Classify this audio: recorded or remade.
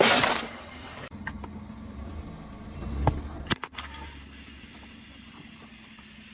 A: recorded